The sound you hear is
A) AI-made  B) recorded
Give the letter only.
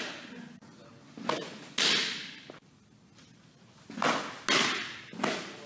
B